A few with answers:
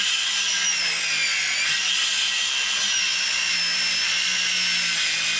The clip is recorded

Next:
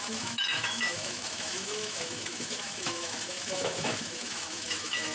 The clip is remade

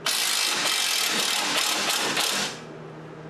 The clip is recorded